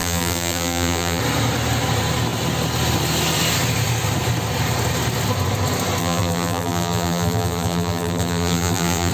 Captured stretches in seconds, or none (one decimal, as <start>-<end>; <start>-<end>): 1.2-6.0